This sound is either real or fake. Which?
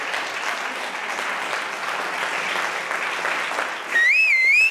real